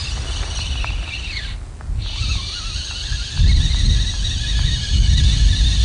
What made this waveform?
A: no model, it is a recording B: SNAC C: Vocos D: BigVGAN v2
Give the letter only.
A